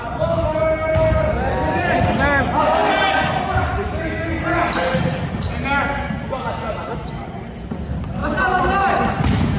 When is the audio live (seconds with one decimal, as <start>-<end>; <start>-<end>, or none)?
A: 0.0-8.2; 9.2-9.6